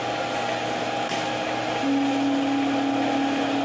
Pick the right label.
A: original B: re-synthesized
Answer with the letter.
A